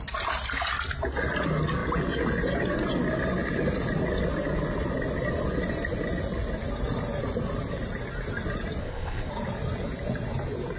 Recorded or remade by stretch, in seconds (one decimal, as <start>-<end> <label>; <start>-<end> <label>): 0.0-8.8 recorded; 8.8-9.3 remade; 9.3-10.8 recorded